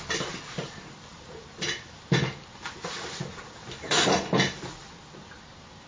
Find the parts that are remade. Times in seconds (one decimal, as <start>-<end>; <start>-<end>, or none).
none